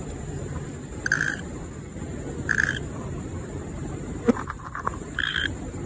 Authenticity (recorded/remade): remade